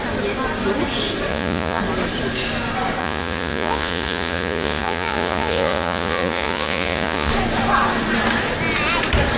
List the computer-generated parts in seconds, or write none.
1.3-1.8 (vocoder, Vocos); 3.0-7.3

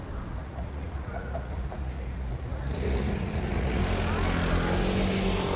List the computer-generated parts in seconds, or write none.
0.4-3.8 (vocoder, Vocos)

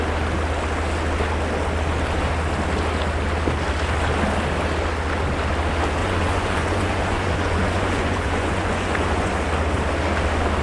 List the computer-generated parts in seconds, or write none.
6.0-9.3 (vocoder, Vocos)

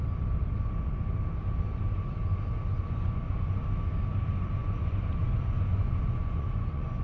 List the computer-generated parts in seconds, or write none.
2.7-3.6 (vocoder, Vocos); 4.6-7.0

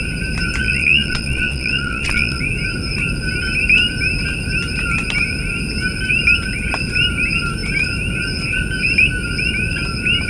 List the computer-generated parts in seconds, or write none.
0.6-2.4 (vocoder, Vocos)

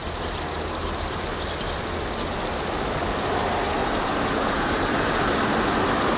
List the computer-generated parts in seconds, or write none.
3.8-5.2 (vocoder, Vocos)

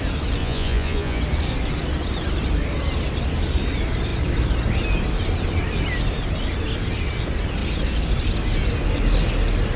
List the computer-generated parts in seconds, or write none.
0.4-1.2 (vocoder, Vocos)

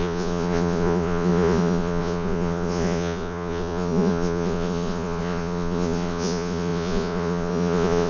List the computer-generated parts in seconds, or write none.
0.0-8.1 (vocoder, Vocos)